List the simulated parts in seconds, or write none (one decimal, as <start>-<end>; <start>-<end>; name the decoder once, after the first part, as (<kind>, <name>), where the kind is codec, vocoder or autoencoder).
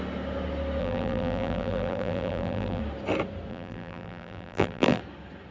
0.8-2.8 (vocoder, BigVGAN v2); 3.5-5.0